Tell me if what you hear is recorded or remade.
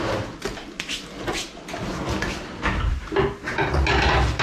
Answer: recorded